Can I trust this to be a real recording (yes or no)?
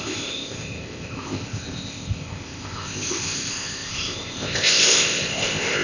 no